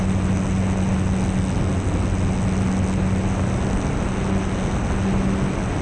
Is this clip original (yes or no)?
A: yes